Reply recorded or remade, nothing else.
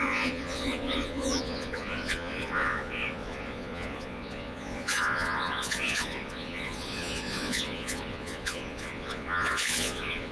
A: remade